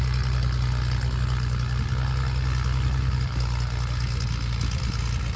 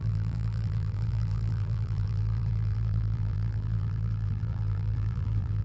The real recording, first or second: first